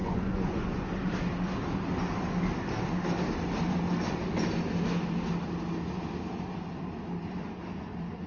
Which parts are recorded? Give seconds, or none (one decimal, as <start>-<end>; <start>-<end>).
0.9-8.3